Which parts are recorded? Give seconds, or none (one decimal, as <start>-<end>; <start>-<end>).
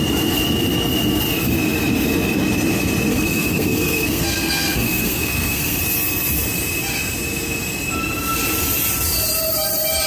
0.0-3.1; 5.8-10.1